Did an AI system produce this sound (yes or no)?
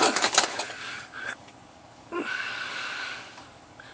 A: yes